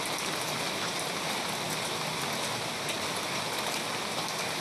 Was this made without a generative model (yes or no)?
yes